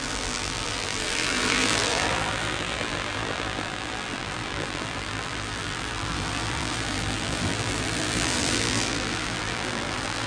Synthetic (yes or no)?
yes